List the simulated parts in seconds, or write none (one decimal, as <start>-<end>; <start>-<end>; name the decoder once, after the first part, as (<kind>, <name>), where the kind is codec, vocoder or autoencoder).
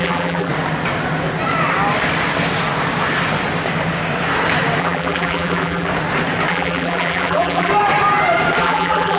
0.0-0.5 (vocoder, BigVGAN v2); 4.8-5.9; 6.5-7.7; 8.6-9.2